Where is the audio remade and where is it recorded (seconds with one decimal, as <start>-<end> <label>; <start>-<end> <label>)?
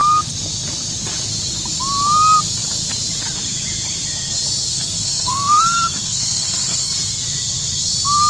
0.0-4.7 recorded; 4.7-6.9 remade; 6.9-8.3 recorded